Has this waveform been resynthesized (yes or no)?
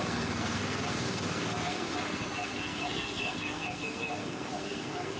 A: yes